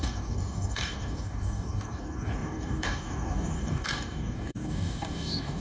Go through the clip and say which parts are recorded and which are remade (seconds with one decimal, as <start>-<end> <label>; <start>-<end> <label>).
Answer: 0.0-5.6 remade